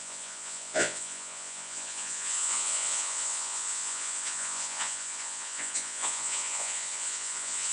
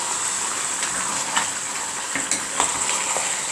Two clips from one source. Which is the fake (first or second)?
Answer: first